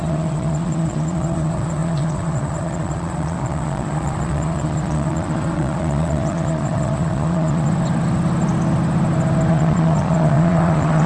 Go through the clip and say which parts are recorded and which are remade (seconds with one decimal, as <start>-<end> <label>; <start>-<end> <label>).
0.0-7.7 remade; 7.7-9.5 recorded; 9.5-11.1 remade